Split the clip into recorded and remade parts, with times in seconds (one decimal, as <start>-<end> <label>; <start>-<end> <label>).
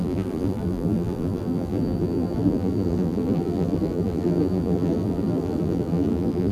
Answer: 0.0-6.5 remade